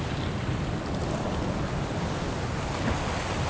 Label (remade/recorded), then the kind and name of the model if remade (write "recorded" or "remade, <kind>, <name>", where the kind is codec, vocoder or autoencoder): recorded